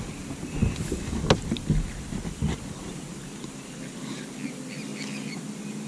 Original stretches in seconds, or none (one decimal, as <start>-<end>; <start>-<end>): 0.0-5.9

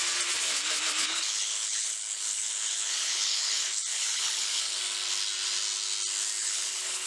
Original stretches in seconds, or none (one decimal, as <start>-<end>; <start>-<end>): 0.0-1.0; 4.8-6.4